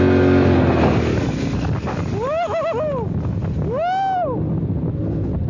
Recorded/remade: recorded